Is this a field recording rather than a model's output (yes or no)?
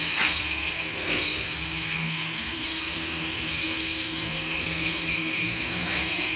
no